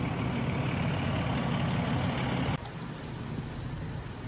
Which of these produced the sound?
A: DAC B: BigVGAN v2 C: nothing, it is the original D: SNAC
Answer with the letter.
C